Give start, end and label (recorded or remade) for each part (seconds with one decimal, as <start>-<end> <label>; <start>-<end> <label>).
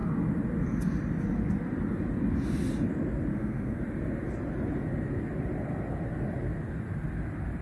0.0-3.3 recorded; 3.3-3.8 remade; 3.8-7.6 recorded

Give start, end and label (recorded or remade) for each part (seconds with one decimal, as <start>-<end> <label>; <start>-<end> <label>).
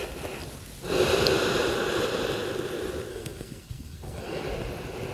0.0-3.1 recorded; 3.1-4.4 remade; 4.4-5.1 recorded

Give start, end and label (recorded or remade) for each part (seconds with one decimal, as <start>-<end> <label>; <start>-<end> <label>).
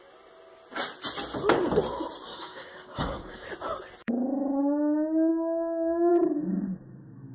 0.0-2.3 recorded; 2.3-3.5 remade; 3.5-4.0 recorded; 4.0-4.6 remade; 4.6-5.3 recorded; 5.3-6.1 remade; 6.1-7.3 recorded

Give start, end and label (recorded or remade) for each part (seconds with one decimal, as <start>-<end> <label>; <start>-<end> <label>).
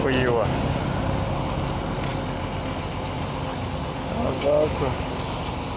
0.0-5.8 recorded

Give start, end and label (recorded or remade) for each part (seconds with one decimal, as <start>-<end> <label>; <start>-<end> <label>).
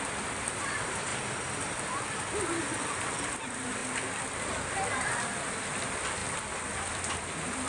0.0-3.8 remade; 3.8-5.7 recorded; 5.7-6.2 remade; 6.2-6.9 recorded; 6.9-7.7 remade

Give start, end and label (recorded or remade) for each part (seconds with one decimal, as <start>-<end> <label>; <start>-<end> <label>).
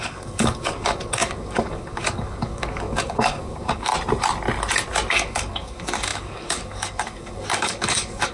0.0-3.9 remade; 3.9-5.1 recorded; 5.1-8.3 remade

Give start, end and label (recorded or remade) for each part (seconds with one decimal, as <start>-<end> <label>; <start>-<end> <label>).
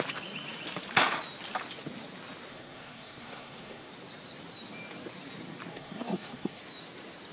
0.0-2.5 recorded; 2.5-3.9 remade; 3.9-5.7 recorded; 5.7-6.6 remade; 6.6-7.3 recorded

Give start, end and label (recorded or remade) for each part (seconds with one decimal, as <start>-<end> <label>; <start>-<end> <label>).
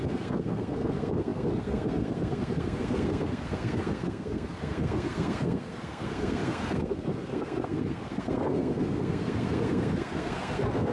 0.0-10.9 remade